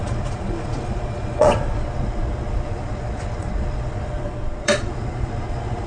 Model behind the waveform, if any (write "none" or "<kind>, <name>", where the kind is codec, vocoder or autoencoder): vocoder, Vocos